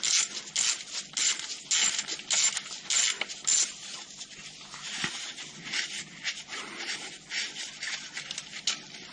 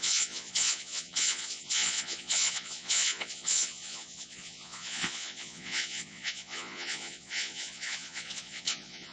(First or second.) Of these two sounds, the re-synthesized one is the second